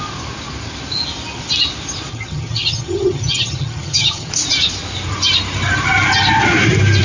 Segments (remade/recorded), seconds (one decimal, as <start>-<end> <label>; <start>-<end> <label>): 0.0-2.1 recorded; 2.1-4.3 remade; 4.3-7.0 recorded